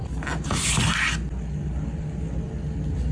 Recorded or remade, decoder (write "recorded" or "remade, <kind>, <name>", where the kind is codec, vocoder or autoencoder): recorded